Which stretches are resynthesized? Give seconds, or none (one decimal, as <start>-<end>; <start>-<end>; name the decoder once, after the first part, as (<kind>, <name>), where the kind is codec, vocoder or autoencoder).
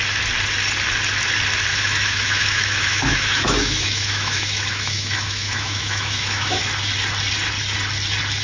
1.7-6.6 (autoencoder, DAC-VAE)